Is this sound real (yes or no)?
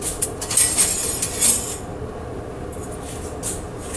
yes